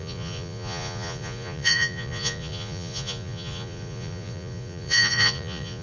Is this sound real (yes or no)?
no